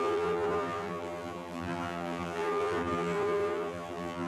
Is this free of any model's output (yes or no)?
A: no